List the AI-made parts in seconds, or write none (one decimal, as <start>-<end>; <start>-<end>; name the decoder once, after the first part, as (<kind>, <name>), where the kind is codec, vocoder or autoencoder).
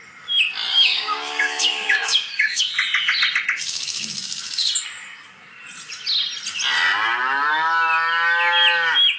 0.7-2.6 (codec, DAC); 3.6-4.7